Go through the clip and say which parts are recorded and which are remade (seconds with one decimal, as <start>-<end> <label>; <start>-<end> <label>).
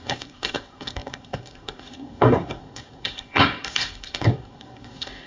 0.0-5.3 remade